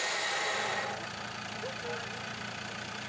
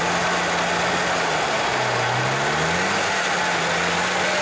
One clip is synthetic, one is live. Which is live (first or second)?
second